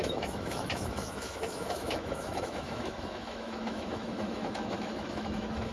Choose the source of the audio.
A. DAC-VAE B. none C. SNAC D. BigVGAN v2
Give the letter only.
A